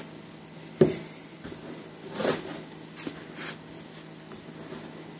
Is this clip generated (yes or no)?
no